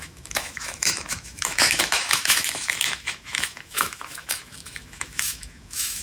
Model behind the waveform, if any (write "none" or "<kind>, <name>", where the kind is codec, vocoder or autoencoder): autoencoder, DAC-VAE